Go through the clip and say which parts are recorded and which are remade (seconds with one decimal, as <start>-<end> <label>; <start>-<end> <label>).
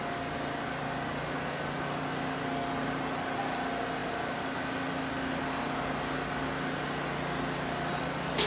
0.0-8.5 recorded